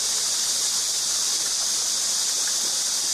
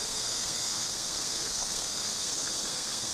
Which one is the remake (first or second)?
second